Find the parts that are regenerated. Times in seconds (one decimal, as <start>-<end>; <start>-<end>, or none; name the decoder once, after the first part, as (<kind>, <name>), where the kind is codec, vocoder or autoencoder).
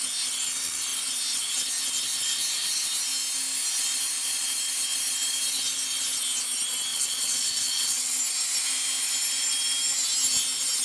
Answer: 6.9-8.2 (vocoder, WaveNeXt)